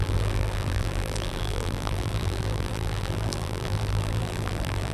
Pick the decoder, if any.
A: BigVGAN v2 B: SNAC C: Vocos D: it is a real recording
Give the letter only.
A